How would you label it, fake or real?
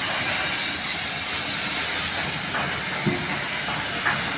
real